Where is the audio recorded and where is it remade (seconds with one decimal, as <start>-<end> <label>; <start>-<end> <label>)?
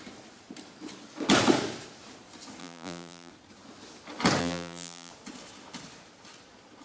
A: 0.0-2.6 recorded; 2.6-3.3 remade; 3.3-4.4 recorded; 4.4-5.1 remade; 5.1-6.8 recorded